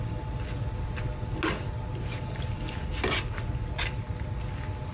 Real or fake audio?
real